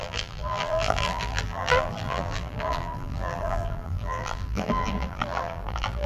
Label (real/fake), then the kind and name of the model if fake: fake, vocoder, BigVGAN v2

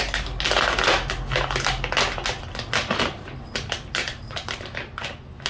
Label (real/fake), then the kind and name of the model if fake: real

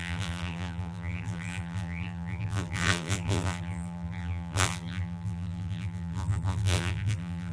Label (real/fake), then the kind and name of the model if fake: fake, vocoder, BigVGAN v2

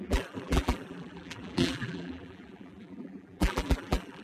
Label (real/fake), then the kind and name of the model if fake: fake, vocoder, BigVGAN v2